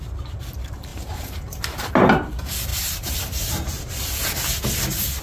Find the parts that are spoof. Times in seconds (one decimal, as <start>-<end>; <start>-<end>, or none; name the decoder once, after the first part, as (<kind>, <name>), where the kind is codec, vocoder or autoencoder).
0.9-1.9 (vocoder, BigVGAN v2); 2.7-3.5